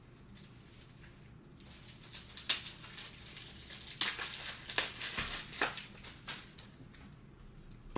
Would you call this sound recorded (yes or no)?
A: yes